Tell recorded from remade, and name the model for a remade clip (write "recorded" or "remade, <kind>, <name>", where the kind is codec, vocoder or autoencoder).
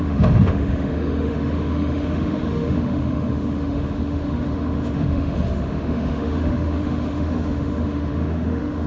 remade, autoencoder, DAC-VAE